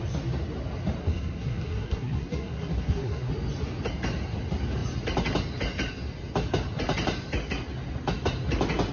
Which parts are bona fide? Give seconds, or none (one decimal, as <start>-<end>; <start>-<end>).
0.0-1.0; 3.3-8.9